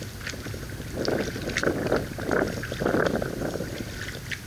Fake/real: real